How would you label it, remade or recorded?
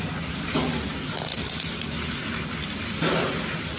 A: recorded